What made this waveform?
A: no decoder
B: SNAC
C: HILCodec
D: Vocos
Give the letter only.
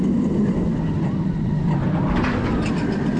A